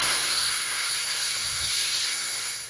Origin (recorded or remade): remade